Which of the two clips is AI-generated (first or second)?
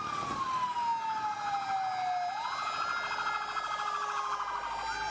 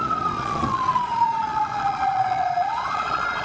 second